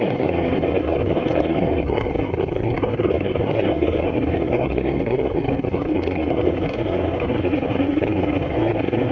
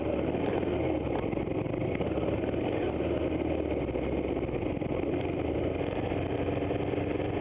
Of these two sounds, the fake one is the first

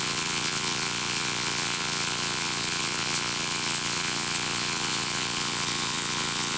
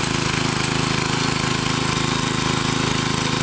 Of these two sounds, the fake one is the first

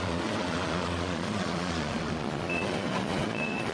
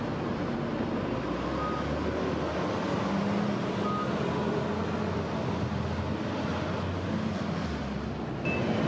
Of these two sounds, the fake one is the first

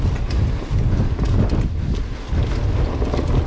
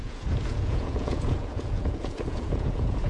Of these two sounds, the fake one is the second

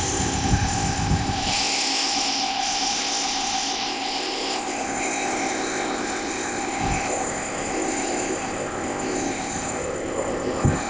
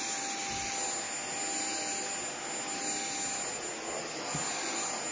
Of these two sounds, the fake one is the first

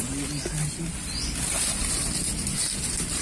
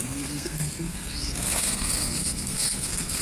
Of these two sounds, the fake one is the second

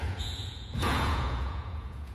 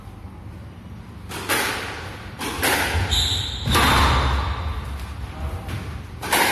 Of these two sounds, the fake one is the first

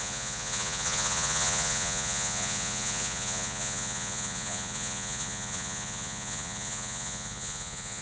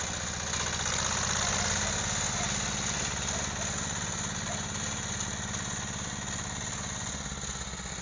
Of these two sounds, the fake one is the first